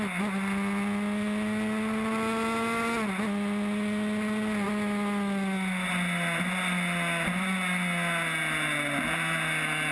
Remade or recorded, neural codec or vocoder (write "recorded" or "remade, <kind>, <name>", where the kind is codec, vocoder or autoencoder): recorded